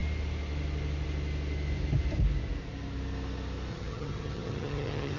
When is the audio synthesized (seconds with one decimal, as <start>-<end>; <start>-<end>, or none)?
3.7-5.2